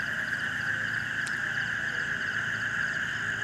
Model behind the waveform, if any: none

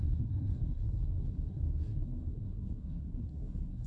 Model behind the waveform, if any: codec, SNAC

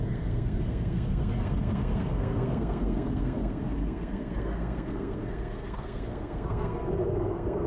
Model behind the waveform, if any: codec, SNAC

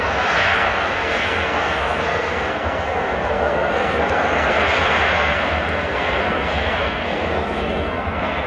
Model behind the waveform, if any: codec, SNAC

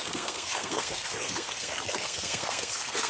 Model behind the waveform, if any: codec, SNAC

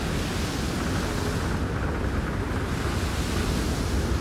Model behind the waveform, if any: none